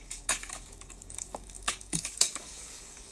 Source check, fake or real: fake